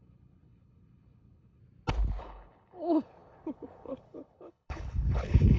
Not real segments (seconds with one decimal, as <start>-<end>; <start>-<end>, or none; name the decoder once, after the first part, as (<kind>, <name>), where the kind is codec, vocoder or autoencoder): 0.0-1.6 (codec, HILCodec); 2.2-5.6

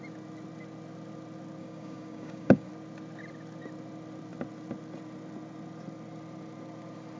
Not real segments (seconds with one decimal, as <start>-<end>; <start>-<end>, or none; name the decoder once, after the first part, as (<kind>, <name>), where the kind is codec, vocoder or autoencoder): 1.6-2.7 (codec, DAC)